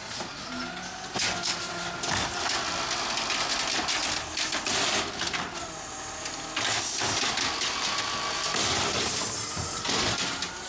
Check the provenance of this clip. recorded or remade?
recorded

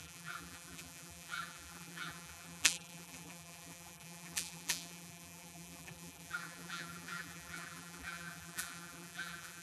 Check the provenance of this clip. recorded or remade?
remade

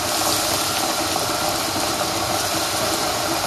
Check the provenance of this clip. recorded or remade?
recorded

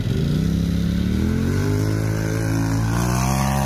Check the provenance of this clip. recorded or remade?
recorded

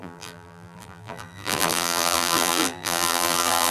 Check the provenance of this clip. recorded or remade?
remade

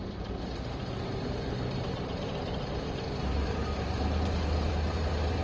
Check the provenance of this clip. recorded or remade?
remade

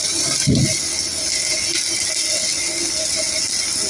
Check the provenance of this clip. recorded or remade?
recorded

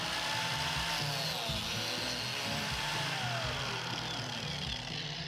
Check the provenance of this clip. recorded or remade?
recorded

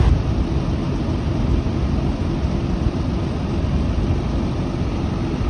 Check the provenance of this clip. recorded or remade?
recorded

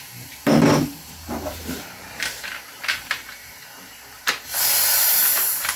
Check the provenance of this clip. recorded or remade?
remade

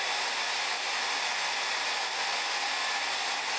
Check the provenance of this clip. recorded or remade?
recorded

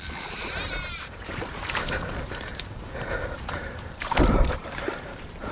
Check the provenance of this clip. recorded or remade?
remade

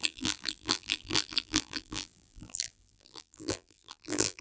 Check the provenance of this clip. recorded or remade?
remade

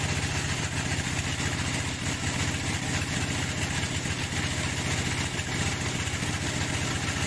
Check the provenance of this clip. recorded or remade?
recorded